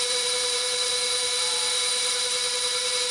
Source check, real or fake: fake